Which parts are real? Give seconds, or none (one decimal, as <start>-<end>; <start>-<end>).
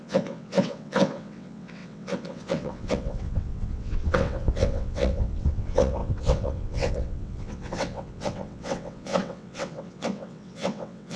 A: none